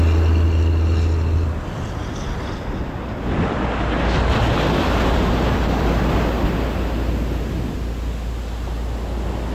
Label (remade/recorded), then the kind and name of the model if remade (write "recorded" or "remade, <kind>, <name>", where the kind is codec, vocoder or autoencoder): recorded